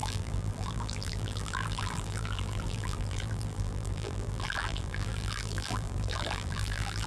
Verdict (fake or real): fake